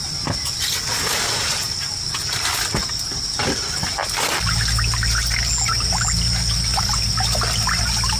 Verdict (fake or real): real